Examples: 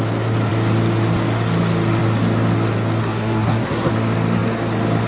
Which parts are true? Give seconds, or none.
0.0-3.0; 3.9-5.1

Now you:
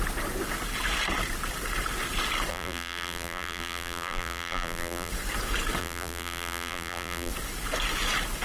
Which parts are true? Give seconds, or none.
0.0-2.5; 5.1-5.8; 7.3-8.4

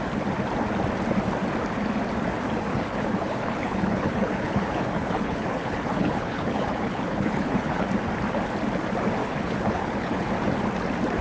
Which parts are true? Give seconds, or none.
0.0-2.7; 7.9-9.2; 10.3-11.2

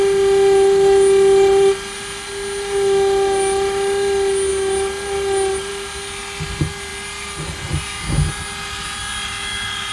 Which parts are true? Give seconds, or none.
0.0-9.9

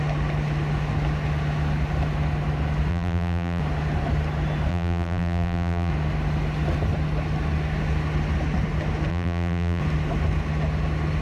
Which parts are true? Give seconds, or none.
0.0-2.9; 3.6-4.7; 5.9-9.1; 9.8-11.2

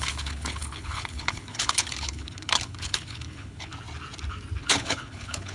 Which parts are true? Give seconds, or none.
3.7-4.6